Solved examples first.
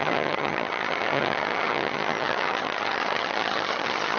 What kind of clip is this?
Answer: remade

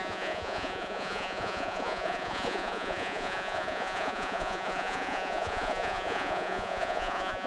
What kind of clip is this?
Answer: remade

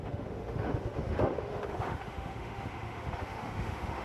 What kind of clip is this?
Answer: remade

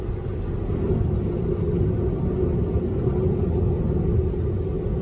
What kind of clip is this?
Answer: recorded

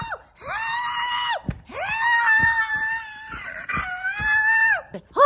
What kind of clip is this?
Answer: remade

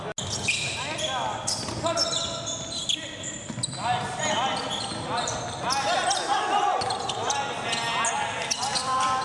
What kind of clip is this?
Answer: recorded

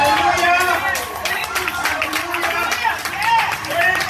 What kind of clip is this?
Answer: recorded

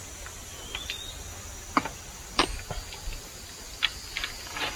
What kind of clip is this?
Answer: recorded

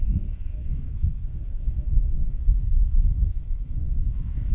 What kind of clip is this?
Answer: remade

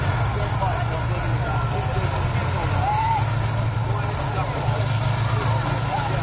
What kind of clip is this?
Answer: recorded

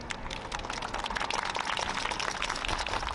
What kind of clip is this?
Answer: recorded